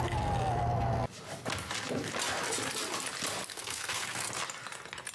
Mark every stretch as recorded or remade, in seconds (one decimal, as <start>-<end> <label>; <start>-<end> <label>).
0.0-3.5 recorded; 3.5-4.3 remade; 4.3-5.1 recorded